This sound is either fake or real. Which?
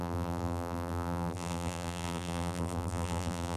fake